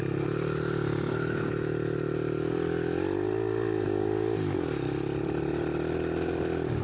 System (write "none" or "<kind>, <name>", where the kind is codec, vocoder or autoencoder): none